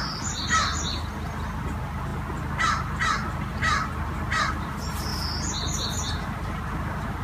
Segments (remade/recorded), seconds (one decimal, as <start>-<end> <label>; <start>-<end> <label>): 0.0-7.2 recorded